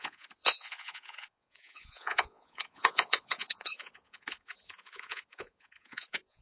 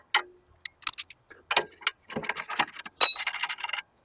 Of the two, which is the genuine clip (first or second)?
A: second